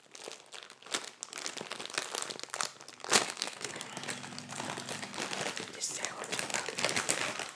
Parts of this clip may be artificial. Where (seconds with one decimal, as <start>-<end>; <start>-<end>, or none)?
3.2-3.9